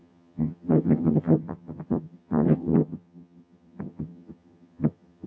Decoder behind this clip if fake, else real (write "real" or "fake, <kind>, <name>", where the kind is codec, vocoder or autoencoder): fake, vocoder, HiFi-GAN